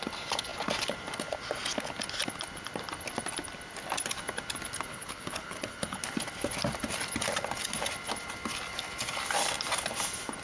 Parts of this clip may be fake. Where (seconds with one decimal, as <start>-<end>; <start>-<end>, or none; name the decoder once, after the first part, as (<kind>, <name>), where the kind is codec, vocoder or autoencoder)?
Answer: 4.9-6.0 (codec, HILCodec)